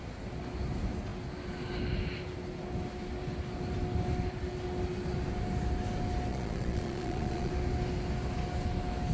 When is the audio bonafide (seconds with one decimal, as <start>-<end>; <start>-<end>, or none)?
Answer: 0.0-6.3; 7.5-9.1